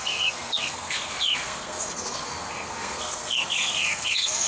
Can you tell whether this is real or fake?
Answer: fake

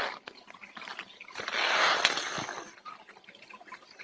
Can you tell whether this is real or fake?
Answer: real